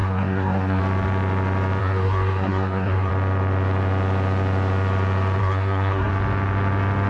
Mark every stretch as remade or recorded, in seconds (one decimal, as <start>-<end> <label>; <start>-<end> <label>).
0.0-0.8 remade; 0.8-1.8 recorded; 1.8-3.1 remade; 3.1-5.4 recorded; 5.4-6.1 remade; 6.1-7.1 recorded

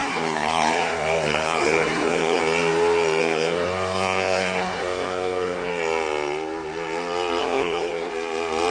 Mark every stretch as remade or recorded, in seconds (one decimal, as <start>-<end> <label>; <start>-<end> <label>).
0.0-2.4 remade; 2.4-3.2 recorded; 3.2-5.7 remade; 5.7-7.4 recorded; 7.4-8.1 remade; 8.1-8.7 recorded

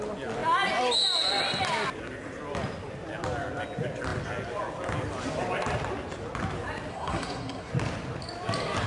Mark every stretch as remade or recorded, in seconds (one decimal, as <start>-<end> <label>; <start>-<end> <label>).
0.0-6.9 recorded; 6.9-7.7 remade; 7.7-8.9 recorded

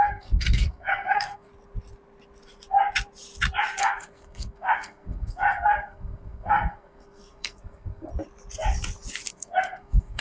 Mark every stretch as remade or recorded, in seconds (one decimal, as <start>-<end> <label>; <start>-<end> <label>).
0.0-1.5 remade; 1.5-3.8 recorded; 3.8-8.1 remade; 8.1-9.3 recorded; 9.3-10.2 remade

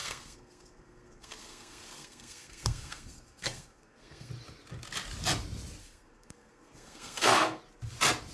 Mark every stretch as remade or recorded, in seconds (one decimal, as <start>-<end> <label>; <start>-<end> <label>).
0.0-4.3 remade; 4.3-5.8 recorded; 5.8-7.6 remade; 7.6-8.3 recorded

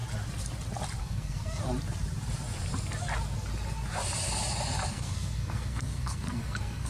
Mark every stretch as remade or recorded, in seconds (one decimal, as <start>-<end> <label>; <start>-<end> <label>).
0.0-1.0 recorded; 1.0-1.6 remade; 1.6-4.9 recorded; 4.9-6.9 remade